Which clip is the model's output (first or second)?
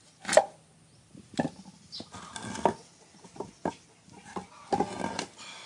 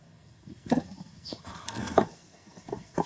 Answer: second